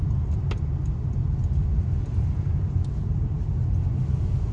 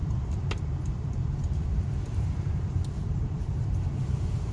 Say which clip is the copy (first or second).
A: second